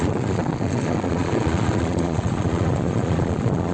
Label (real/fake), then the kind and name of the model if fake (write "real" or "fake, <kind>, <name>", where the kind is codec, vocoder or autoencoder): fake, vocoder, Vocos